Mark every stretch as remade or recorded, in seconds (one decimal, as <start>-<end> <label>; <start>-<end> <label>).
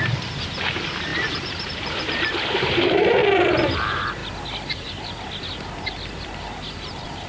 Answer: 0.0-4.2 remade; 4.2-7.3 recorded